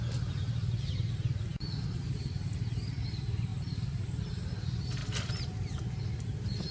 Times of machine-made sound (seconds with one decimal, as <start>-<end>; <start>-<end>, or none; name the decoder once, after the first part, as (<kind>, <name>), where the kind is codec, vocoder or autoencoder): 3.5-4.2 (vocoder, BigVGAN v2)